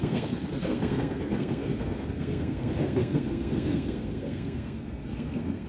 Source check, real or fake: fake